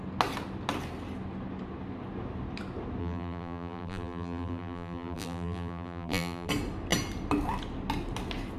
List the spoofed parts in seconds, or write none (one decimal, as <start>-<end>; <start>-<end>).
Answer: 3.0-6.5